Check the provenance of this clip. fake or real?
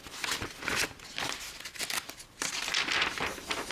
real